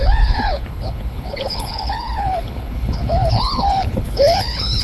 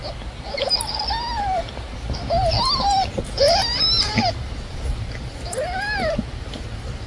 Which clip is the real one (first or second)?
second